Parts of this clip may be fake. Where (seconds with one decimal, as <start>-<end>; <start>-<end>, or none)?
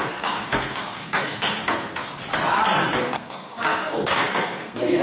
0.0-2.1; 3.0-5.0